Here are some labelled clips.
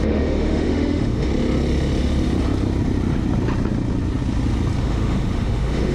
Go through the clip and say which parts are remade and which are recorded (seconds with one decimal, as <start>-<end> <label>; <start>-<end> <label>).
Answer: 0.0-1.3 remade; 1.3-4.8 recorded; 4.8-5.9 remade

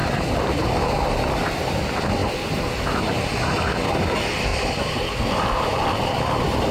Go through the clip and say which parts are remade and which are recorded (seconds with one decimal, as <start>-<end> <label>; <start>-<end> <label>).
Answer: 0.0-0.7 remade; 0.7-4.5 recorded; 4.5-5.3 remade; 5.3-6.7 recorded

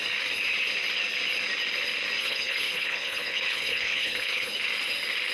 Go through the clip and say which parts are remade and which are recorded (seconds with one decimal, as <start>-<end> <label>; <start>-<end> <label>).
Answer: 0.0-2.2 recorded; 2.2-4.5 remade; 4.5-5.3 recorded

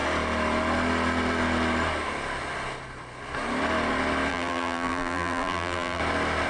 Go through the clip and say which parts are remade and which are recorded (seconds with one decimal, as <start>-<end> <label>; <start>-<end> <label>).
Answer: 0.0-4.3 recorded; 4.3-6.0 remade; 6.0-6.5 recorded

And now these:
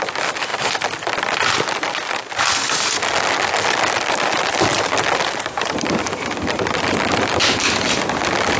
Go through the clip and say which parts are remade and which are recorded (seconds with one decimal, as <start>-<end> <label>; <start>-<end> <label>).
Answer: 0.0-8.6 recorded